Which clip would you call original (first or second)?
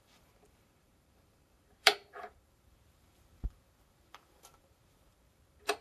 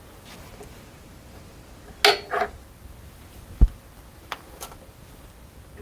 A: second